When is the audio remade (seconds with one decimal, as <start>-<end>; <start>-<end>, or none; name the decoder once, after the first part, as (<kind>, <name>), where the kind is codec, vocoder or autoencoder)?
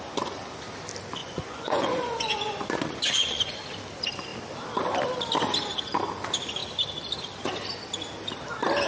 1.2-3.5 (vocoder, Vocos)